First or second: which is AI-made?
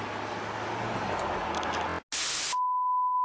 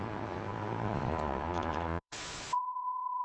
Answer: second